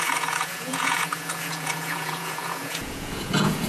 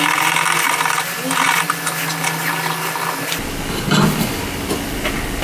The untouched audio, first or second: second